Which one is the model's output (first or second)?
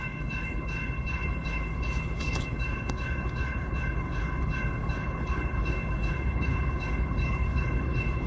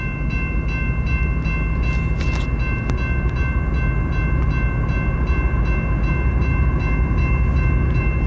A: first